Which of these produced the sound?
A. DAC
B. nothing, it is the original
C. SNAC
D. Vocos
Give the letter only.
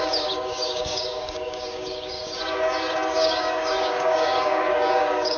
A